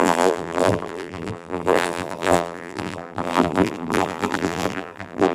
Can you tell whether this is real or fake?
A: fake